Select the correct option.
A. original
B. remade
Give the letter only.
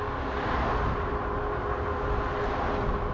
A